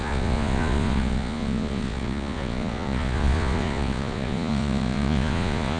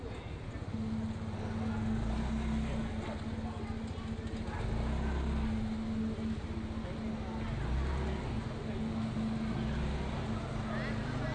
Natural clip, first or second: second